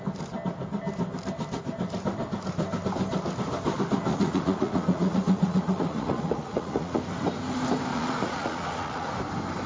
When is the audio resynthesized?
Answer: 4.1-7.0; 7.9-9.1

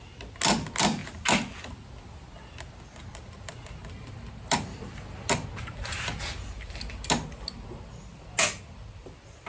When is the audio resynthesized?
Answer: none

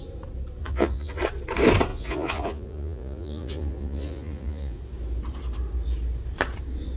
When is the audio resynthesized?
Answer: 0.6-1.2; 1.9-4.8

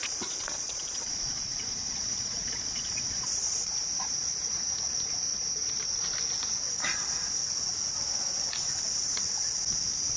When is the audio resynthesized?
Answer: 0.0-4.6; 5.3-5.8

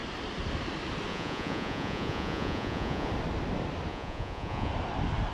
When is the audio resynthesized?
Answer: 1.1-3.1; 3.9-4.7

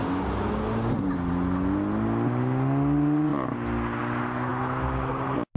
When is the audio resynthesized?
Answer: none

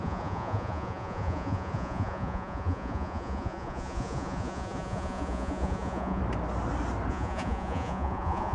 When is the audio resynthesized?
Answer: 0.0-6.2; 7.1-8.5